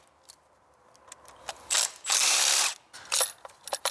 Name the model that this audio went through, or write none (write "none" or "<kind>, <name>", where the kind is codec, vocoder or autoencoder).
none